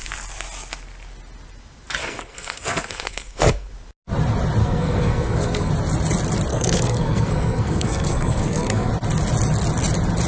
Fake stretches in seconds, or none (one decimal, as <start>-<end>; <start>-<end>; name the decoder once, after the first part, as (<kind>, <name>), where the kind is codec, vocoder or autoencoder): 2.0-3.7 (codec, SNAC); 4.6-5.7; 6.5-8.9